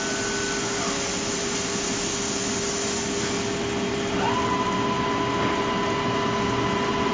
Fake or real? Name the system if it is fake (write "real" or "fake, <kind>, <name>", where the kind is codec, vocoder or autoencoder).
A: real